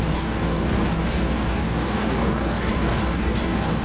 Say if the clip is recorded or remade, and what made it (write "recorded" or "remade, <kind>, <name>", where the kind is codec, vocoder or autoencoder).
remade, codec, DAC